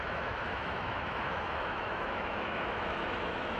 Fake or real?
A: fake